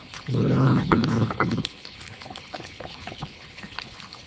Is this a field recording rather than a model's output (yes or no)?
no